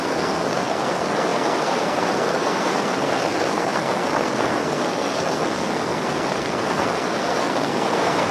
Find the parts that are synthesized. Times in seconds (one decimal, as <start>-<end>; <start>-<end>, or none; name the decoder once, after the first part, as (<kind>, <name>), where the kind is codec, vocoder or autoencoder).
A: 0.0-8.3 (codec, SNAC)